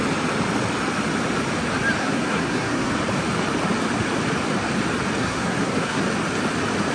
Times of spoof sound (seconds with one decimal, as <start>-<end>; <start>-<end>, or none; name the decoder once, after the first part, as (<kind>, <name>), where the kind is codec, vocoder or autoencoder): 2.0-2.9 (codec, SNAC); 5.2-6.0